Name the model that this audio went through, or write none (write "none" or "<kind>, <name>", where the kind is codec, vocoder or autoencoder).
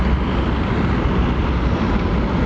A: none